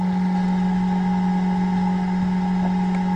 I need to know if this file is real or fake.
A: real